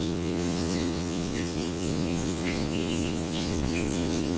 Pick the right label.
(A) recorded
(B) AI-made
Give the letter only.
B